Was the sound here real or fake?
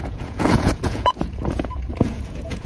fake